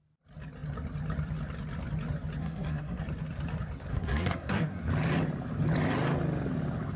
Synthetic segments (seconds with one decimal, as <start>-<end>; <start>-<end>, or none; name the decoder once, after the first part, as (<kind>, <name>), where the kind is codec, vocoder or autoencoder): 2.4-3.0 (codec, SNAC); 3.9-4.8